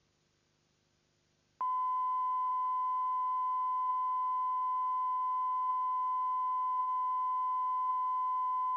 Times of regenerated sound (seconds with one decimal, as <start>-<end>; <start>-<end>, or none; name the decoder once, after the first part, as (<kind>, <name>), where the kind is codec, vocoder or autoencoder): none